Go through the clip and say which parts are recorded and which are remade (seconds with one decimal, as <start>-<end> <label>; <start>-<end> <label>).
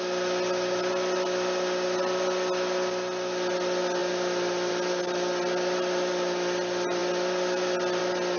0.0-8.4 recorded